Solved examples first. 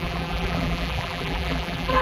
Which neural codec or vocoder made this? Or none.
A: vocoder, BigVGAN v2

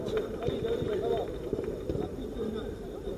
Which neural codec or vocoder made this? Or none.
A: none